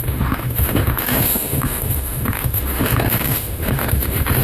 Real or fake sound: fake